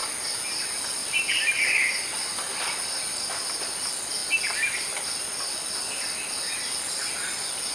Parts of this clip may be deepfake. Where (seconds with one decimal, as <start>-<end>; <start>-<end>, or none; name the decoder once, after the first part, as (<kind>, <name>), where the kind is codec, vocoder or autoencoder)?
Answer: 1.0-3.8 (vocoder, BigVGAN v2)